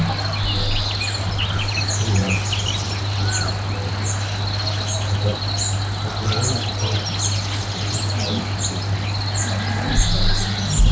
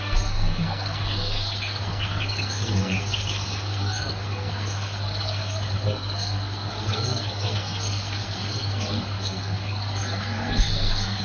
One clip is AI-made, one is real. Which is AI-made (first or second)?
second